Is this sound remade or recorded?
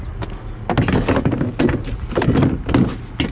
recorded